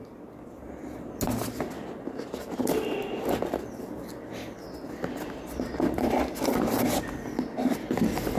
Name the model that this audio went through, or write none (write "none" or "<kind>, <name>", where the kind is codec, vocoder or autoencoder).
none